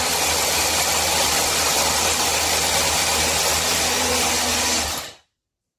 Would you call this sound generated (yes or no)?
no